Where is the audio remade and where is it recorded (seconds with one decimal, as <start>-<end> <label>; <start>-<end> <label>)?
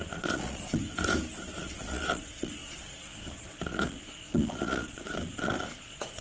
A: 0.0-0.8 remade; 0.8-1.6 recorded; 1.6-6.2 remade